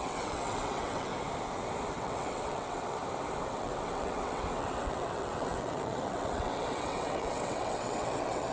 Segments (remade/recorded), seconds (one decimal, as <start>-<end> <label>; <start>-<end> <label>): 0.0-1.1 remade; 1.1-1.9 recorded; 1.9-3.0 remade; 3.0-3.5 recorded; 3.5-8.5 remade